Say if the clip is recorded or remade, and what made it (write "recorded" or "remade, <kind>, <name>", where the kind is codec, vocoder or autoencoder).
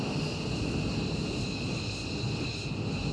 recorded